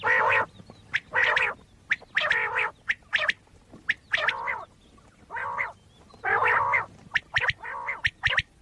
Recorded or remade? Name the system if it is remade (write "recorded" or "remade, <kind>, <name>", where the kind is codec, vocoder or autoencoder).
recorded